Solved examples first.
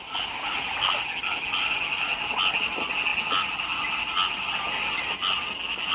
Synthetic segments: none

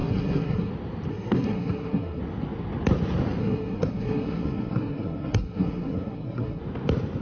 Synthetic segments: 0.0-0.7 (codec, SNAC); 1.1-2.2; 3.4-6.6

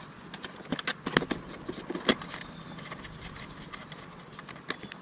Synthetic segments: none

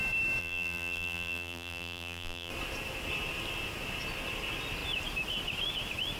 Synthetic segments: 0.4-2.5 (vocoder, BigVGAN v2)

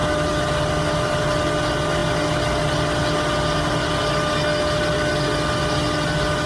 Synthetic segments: none

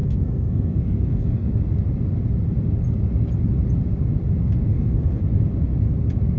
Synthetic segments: 0.0-1.5 (codec, SNAC); 4.7-5.2

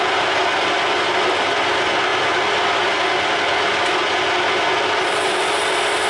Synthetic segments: none

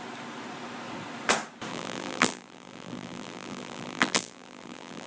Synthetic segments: 1.7-5.1 (vocoder, BigVGAN v2)